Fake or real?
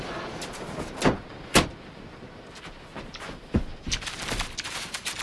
real